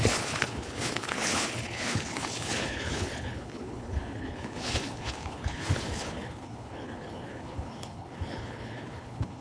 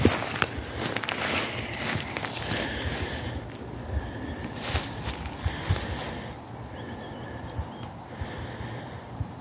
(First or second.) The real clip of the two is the second